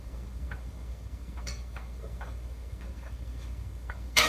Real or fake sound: fake